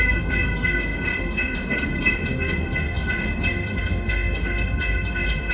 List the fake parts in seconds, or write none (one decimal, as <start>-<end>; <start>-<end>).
0.0-5.5